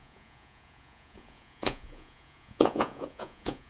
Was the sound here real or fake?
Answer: fake